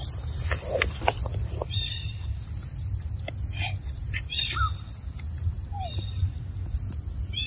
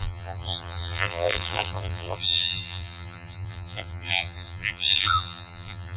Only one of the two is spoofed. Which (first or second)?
second